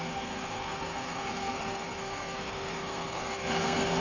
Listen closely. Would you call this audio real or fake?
fake